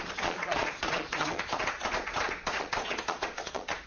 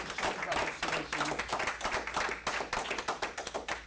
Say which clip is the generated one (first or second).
first